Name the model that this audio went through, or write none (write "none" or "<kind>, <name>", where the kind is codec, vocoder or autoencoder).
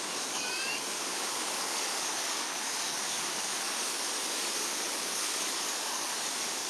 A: codec, DAC